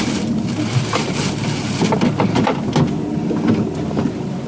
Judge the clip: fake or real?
real